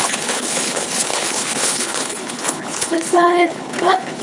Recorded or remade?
remade